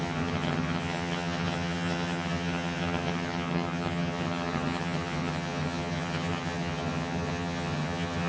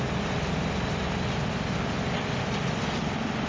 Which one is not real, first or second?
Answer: first